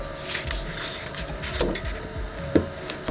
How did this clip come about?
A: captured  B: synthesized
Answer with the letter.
A